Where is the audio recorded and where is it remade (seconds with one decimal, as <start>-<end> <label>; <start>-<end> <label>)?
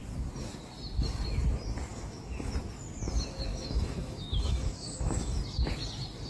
0.0-1.9 recorded; 1.9-2.5 remade; 2.5-3.5 recorded; 3.5-5.4 remade; 5.4-6.3 recorded